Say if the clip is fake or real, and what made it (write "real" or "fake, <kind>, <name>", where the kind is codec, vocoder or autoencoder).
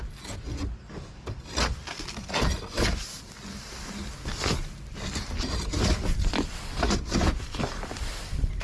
real